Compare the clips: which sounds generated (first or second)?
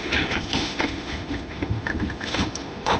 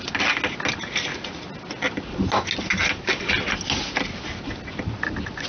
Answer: first